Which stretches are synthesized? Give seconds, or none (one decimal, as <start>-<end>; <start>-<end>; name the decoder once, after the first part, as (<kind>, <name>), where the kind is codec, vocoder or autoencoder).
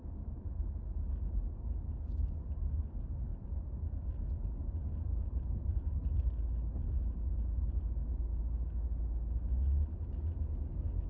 3.3-5.9 (vocoder, BigVGAN v2)